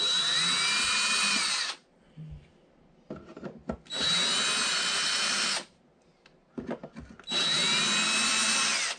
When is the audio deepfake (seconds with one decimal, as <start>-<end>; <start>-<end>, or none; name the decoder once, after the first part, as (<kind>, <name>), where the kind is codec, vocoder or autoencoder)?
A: none